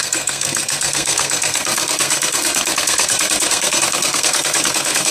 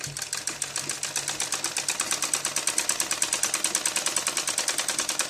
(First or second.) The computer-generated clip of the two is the first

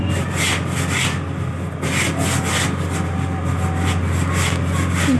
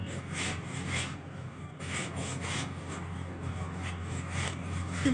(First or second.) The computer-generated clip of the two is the second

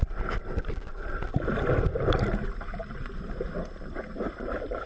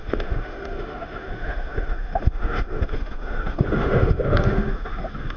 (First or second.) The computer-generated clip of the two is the second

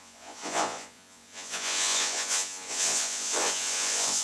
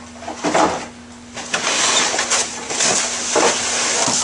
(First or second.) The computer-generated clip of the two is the first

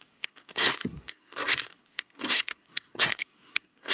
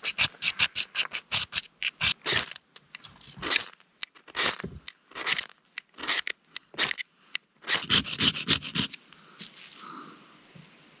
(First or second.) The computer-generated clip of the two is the first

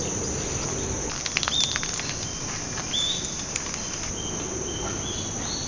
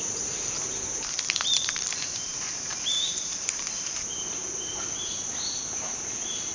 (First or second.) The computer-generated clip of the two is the second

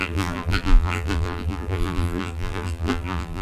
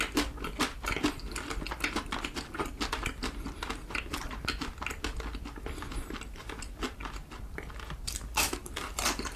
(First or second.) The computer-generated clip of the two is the first